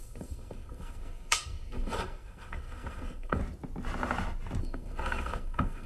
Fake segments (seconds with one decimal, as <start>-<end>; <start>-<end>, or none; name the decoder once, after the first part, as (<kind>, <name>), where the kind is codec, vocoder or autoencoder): 0.0-3.4 (codec, SNAC); 4.6-5.9